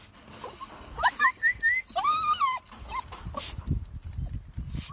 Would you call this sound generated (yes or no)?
no